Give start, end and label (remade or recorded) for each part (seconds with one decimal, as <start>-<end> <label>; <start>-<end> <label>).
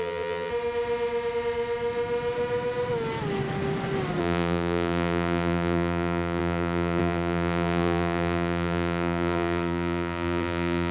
0.0-0.5 remade; 0.5-4.2 recorded; 4.2-10.9 remade